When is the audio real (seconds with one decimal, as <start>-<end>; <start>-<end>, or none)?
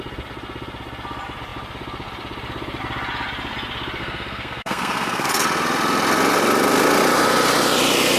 0.0-4.0; 5.3-8.2